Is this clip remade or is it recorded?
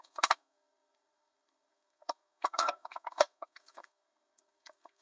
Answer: remade